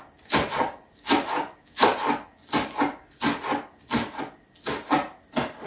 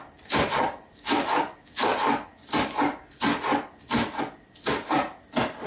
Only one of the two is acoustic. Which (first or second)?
first